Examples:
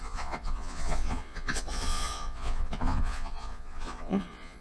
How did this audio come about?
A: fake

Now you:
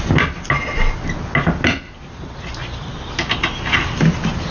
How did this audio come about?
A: real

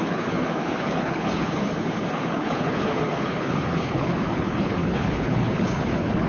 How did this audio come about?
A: fake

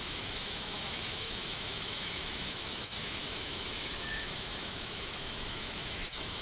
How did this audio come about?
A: fake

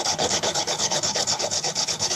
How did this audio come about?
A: fake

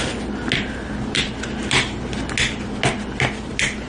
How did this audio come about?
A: real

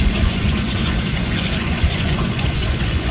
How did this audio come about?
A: fake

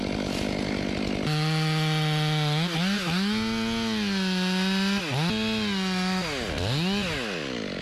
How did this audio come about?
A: real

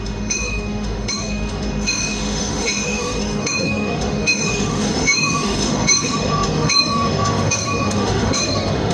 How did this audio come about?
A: fake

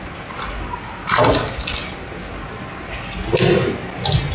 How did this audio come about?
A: real